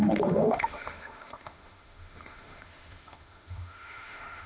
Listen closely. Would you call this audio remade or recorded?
remade